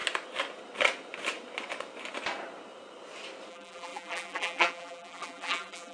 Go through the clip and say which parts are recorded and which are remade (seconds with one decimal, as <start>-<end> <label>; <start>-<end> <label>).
0.0-3.5 recorded; 3.5-5.9 remade